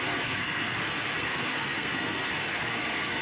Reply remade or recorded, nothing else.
remade